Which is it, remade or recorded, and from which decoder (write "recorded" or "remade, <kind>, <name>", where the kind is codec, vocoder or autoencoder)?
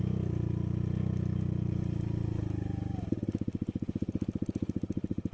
recorded